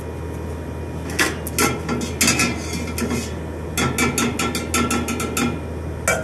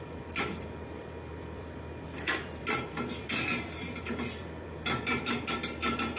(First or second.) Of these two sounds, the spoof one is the second